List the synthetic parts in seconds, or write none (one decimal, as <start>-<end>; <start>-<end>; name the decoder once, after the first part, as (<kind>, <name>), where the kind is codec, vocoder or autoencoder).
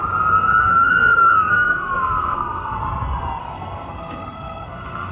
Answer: 0.6-2.8 (codec, SNAC); 3.4-5.1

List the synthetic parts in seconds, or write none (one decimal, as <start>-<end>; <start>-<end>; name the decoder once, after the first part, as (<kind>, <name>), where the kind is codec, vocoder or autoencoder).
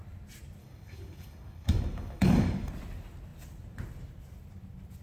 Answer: 0.6-2.7 (codec, DAC)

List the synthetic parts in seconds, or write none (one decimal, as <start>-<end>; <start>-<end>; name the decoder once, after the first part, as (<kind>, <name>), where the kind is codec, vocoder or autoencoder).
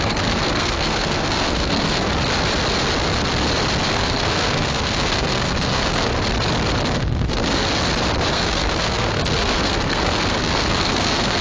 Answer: 0.0-2.1 (codec, SNAC); 3.9-6.1; 7.0-7.7; 8.3-11.4